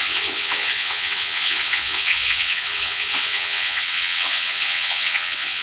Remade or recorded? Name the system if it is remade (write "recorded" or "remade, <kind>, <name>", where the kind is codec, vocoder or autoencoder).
remade, vocoder, WaveNeXt